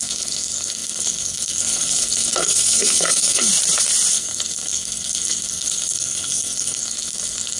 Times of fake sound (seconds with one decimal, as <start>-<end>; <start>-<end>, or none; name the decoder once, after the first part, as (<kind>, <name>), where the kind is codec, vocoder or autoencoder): 0.0-3.5 (codec, SNAC); 4.1-7.6